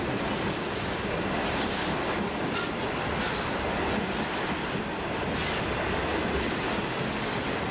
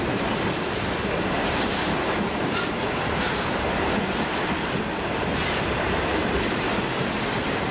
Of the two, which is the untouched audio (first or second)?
first